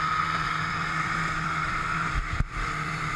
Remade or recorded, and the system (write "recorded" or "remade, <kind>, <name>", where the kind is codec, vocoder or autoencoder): remade, vocoder, BigVGAN v2